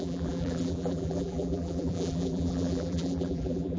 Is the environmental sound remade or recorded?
remade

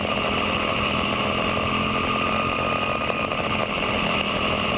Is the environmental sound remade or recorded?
recorded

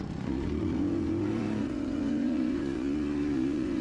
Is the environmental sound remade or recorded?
remade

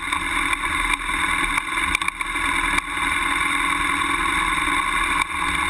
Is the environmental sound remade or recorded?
recorded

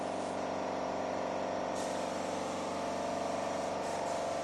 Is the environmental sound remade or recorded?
recorded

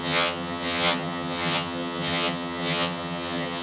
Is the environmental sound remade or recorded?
remade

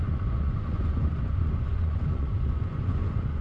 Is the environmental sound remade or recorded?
remade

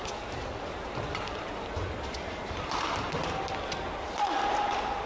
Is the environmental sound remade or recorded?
recorded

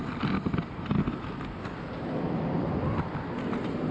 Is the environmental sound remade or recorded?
recorded